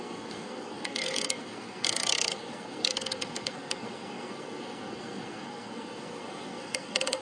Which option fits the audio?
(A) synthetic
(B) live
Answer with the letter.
A